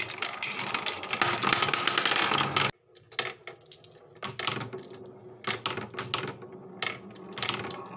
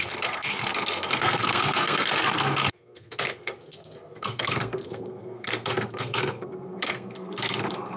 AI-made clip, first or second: second